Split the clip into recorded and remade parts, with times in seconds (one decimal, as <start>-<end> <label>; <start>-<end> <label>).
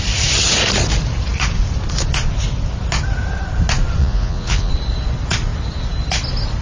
0.0-4.0 recorded; 4.0-4.7 remade; 4.7-6.6 recorded